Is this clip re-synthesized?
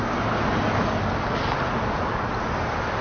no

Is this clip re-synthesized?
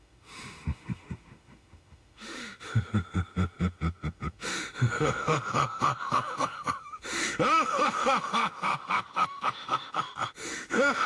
yes